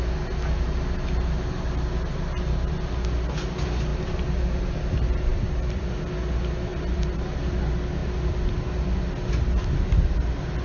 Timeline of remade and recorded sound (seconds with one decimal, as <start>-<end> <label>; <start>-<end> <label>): 0.0-5.3 recorded; 5.3-5.9 remade; 5.9-6.7 recorded; 6.7-7.6 remade; 7.6-10.6 recorded

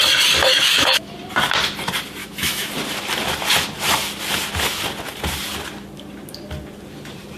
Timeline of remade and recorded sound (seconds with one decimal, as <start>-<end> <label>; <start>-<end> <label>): 0.0-0.5 recorded; 0.5-1.1 remade; 1.1-2.2 recorded; 2.2-2.7 remade; 2.7-7.4 recorded

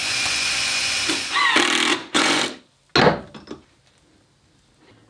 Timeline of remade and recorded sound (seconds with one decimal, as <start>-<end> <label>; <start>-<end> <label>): 0.0-1.4 remade; 1.4-1.9 recorded; 1.9-2.4 remade; 2.4-5.1 recorded

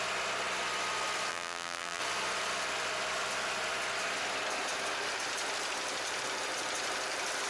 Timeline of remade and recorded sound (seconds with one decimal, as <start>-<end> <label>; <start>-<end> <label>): 0.0-1.3 recorded; 1.3-2.0 remade; 2.0-7.5 recorded

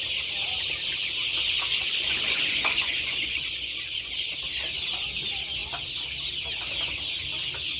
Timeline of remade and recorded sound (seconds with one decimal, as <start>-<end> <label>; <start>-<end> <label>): 0.0-1.7 recorded; 1.7-4.1 remade; 4.1-7.8 recorded

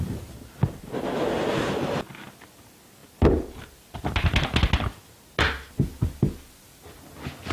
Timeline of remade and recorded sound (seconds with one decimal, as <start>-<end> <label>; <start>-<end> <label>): 0.0-7.5 recorded

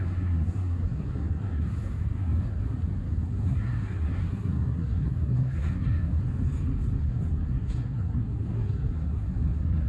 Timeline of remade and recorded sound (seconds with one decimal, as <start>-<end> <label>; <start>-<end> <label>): 0.0-6.2 remade; 6.2-7.0 recorded; 7.0-9.9 remade